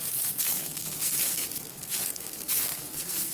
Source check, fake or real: fake